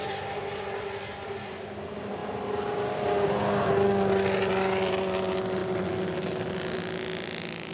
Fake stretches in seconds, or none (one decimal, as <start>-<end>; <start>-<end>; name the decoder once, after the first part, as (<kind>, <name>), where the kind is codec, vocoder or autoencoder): none